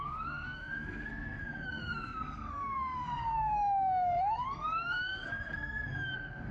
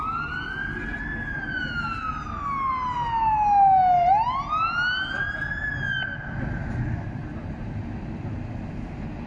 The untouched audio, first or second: second